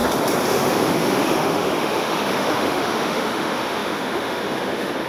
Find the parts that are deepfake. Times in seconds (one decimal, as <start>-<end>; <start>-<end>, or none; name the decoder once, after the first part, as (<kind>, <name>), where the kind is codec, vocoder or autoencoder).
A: 0.5-5.1 (autoencoder, DAC-VAE)